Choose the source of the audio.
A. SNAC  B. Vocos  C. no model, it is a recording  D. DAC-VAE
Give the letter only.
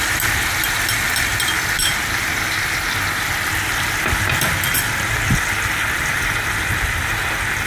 C